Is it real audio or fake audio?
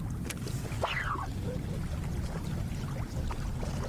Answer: real